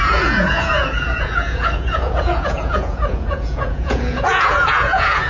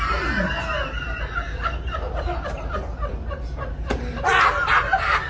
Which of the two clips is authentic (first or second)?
second